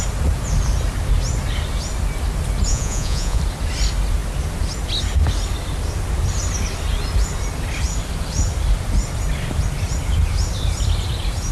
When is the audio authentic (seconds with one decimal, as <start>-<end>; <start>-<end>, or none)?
0.0-2.7; 3.4-11.5